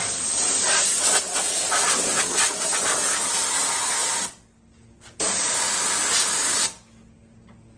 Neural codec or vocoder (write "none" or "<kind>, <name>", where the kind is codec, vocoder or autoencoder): none